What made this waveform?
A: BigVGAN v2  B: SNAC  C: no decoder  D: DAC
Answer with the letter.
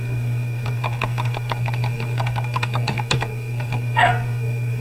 B